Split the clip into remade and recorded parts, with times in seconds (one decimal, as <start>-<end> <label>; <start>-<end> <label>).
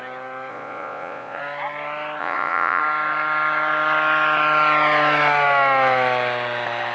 0.0-0.5 recorded; 0.5-1.4 remade; 1.4-2.2 recorded; 2.2-2.8 remade; 2.8-6.9 recorded